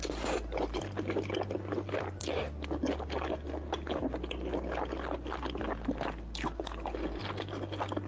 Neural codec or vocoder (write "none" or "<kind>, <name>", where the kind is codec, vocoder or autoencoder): none